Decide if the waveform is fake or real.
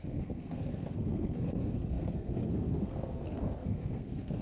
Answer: fake